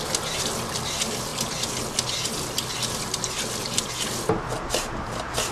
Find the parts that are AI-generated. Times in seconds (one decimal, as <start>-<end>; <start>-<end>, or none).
none